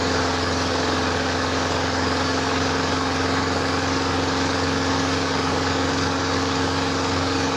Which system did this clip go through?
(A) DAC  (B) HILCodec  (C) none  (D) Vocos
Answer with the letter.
A